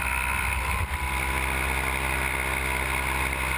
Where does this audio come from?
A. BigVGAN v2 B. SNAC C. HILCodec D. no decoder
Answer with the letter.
D